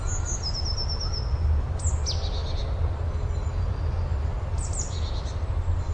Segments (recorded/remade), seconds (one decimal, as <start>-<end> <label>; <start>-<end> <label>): 0.0-5.9 recorded